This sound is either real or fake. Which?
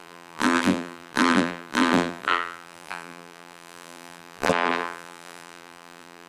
fake